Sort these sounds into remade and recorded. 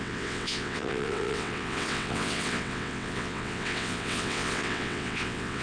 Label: remade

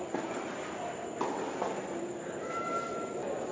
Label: recorded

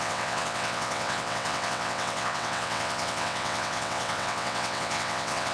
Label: remade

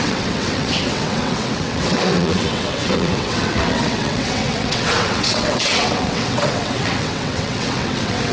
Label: remade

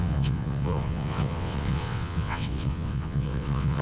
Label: remade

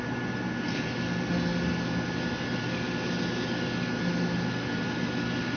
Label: recorded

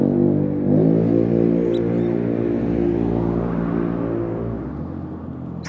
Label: recorded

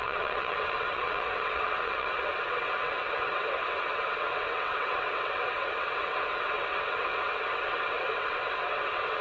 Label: remade